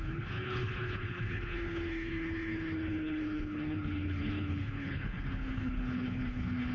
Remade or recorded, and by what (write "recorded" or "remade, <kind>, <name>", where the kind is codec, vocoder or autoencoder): remade, codec, HILCodec